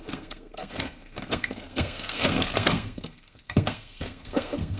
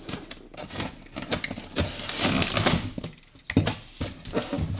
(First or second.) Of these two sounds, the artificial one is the first